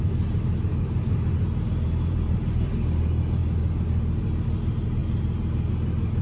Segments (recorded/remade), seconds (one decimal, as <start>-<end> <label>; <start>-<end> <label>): 0.0-0.7 recorded; 0.7-2.7 remade; 2.7-6.2 recorded